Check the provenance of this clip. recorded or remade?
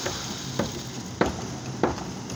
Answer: recorded